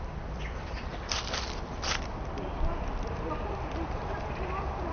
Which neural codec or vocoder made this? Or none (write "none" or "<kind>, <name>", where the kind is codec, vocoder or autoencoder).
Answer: none